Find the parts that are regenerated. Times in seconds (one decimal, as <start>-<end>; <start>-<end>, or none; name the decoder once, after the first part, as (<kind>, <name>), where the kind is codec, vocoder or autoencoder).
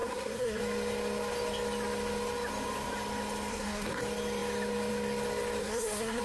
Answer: 0.0-0.6 (codec, SNAC); 3.5-4.0; 5.6-6.2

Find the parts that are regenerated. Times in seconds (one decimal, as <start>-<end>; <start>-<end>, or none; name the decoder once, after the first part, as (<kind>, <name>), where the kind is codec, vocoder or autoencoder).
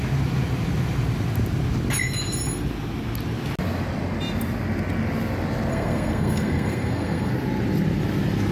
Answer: 5.7-7.3 (codec, SNAC)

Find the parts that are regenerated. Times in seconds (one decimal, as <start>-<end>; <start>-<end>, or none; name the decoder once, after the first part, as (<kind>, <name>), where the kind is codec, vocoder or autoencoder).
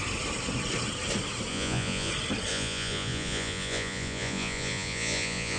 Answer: 1.5-2.1 (vocoder, Vocos); 2.5-5.6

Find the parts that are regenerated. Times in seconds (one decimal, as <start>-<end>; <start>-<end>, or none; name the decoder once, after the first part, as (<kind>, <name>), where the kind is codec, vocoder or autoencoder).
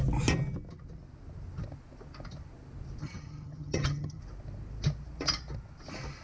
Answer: 3.0-4.2 (vocoder, HiFi-GAN)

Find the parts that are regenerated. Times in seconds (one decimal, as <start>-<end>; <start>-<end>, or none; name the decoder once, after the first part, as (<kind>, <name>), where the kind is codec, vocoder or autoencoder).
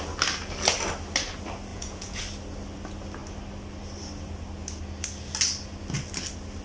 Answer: 1.7-2.2 (vocoder, Vocos)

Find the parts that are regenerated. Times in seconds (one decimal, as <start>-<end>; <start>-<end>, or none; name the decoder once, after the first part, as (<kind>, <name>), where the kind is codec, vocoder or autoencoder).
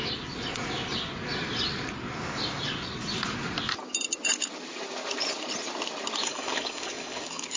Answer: 6.2-7.6 (codec, DAC)